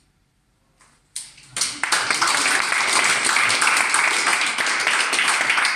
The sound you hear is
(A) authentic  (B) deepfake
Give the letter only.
A